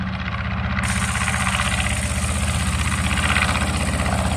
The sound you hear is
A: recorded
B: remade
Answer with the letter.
A